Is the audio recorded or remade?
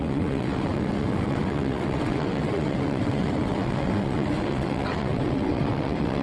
remade